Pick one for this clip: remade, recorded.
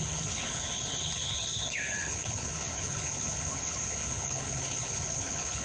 remade